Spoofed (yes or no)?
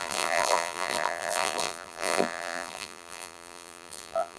yes